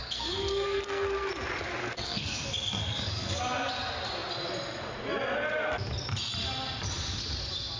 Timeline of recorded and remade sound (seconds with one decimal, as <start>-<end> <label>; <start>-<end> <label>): 0.0-1.3 remade; 1.3-1.8 recorded; 1.8-3.4 remade; 3.4-7.8 recorded